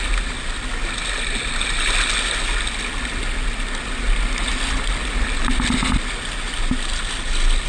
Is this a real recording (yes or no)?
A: yes